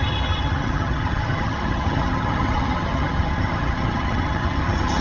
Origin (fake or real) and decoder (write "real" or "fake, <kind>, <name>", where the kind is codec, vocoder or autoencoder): fake, vocoder, HiFi-GAN